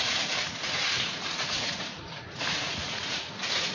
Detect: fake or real fake